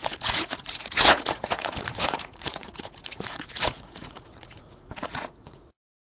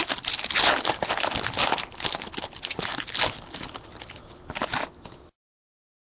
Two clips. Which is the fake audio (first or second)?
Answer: first